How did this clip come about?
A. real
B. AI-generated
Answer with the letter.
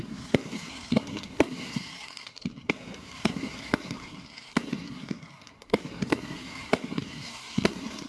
B